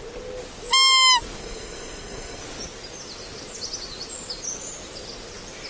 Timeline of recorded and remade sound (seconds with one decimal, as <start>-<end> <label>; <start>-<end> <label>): 0.0-1.4 recorded; 1.4-2.4 remade; 2.4-5.7 recorded